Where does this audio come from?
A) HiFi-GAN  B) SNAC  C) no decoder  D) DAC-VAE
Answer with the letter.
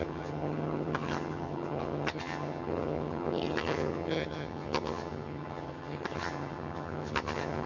A